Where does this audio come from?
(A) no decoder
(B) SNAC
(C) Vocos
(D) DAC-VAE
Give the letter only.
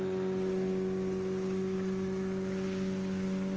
A